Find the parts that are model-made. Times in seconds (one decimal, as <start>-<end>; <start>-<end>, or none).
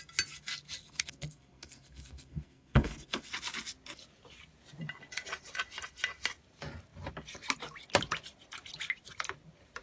0.8-3.3